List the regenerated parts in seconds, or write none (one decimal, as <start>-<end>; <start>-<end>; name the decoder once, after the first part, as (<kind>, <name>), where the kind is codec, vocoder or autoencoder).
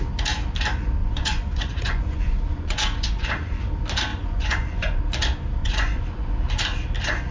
1.0-3.6 (vocoder, Vocos); 4.1-5.0; 5.6-6.5